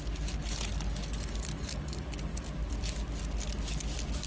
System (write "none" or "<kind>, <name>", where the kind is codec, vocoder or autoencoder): none